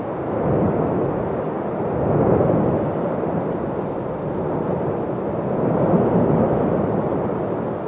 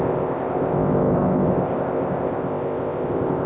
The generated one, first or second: second